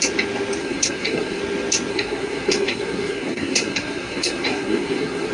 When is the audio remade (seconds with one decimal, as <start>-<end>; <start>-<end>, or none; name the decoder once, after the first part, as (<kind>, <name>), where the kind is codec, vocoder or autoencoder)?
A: 0.6-1.4 (codec, SNAC); 1.9-5.3